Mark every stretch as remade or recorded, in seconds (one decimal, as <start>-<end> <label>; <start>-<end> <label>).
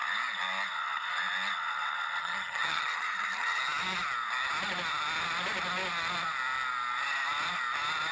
0.0-2.2 recorded; 2.2-3.6 remade; 3.6-8.1 recorded